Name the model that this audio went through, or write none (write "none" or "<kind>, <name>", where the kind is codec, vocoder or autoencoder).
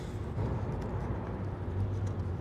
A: none